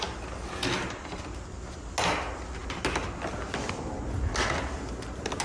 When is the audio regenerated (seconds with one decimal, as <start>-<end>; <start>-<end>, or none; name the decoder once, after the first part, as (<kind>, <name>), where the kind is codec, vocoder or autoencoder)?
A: none